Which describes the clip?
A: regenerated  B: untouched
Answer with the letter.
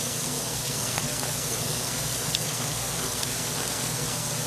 A